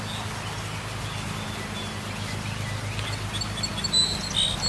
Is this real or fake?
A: real